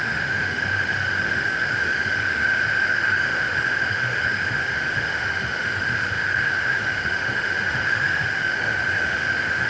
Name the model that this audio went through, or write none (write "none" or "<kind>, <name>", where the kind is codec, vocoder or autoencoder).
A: autoencoder, DAC-VAE